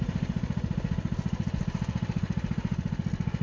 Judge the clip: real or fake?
real